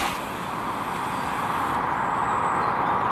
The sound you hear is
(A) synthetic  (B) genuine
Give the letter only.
B